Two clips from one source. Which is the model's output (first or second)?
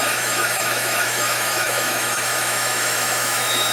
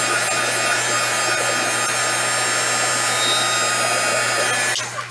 first